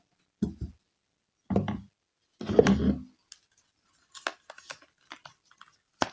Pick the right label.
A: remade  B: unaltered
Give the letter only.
B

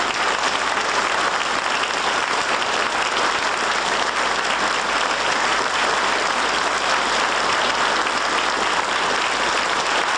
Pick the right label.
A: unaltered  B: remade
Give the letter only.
A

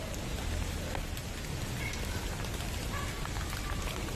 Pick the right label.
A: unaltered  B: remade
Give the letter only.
A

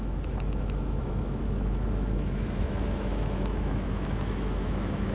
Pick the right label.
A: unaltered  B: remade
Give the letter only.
B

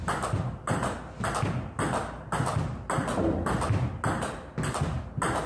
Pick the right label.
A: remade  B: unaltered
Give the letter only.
B